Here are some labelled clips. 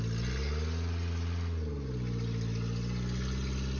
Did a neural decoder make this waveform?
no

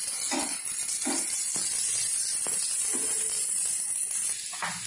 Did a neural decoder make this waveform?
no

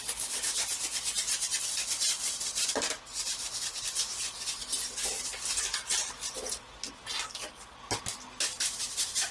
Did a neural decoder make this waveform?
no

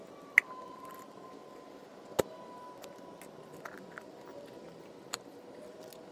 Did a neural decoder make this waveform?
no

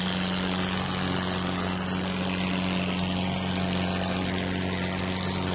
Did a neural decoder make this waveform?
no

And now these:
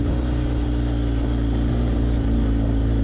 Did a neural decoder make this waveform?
no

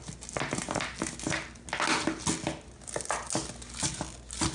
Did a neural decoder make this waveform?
no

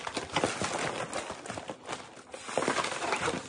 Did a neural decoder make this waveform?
no